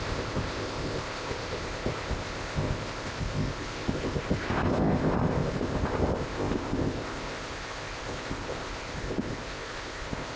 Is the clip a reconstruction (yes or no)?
yes